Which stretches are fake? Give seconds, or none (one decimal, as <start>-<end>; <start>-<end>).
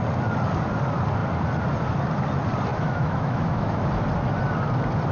2.7-3.9